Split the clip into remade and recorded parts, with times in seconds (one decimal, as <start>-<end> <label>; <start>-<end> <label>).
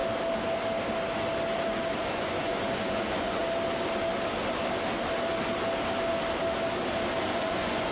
0.0-2.0 recorded; 2.0-3.4 remade; 3.4-7.2 recorded; 7.2-7.9 remade